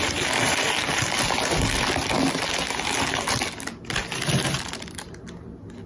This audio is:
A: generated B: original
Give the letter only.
B